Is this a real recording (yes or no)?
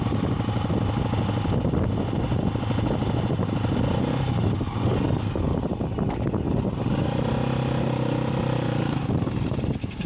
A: yes